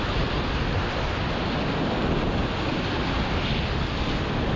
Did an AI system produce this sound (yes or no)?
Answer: no